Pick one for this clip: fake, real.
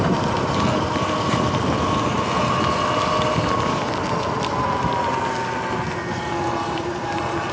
real